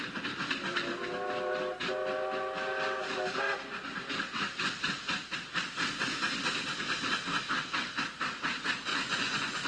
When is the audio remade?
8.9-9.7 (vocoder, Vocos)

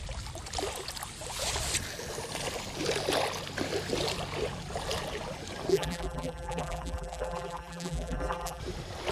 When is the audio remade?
5.7-8.6 (vocoder, BigVGAN v2)

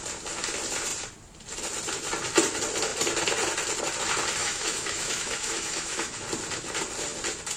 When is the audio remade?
4.4-6.2 (autoencoder, DAC-VAE)

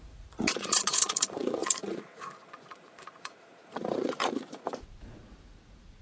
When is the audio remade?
0.0-6.0 (vocoder, Vocos)

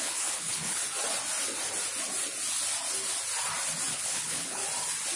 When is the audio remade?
0.0-0.8 (codec, HILCodec); 3.9-4.6

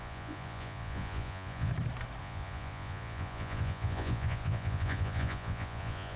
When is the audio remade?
0.0-1.7 (vocoder, Vocos); 2.2-6.2

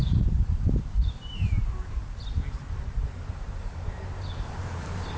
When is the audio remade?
0.0-2.0 (vocoder, BigVGAN v2); 2.7-5.2